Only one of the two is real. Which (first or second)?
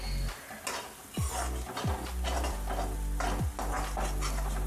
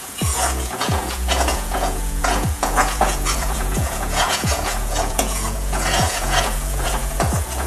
first